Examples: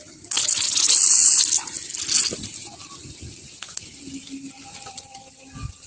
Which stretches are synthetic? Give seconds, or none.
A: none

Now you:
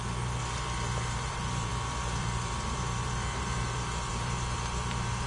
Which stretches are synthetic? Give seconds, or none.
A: 0.0-0.4 (vocoder, BigVGAN v2); 1.0-5.3

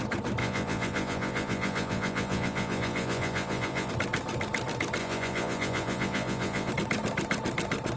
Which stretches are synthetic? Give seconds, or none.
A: 0.4-3.9 (vocoder, Vocos); 5.0-6.7

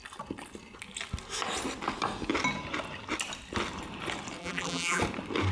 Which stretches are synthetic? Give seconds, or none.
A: 4.4-5.0 (vocoder, BigVGAN v2)

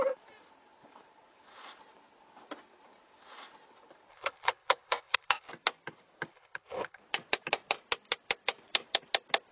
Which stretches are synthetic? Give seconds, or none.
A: 4.1-5.5 (codec, HILCodec); 6.3-7.0

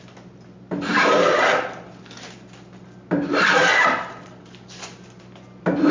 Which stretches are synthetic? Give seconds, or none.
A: none